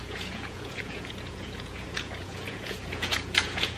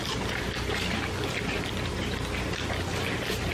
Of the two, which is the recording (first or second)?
second